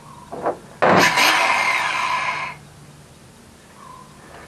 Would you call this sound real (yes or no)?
yes